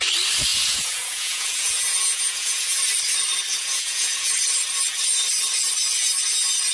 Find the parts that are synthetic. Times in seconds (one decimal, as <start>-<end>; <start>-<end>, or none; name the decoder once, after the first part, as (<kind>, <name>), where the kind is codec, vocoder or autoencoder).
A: 0.5-2.8 (vocoder, Vocos); 3.5-4.3